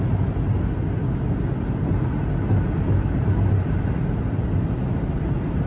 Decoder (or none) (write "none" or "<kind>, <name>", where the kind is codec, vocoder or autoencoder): none